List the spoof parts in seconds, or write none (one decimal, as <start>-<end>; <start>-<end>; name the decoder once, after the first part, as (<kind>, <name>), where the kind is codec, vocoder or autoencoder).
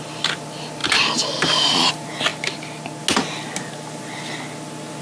none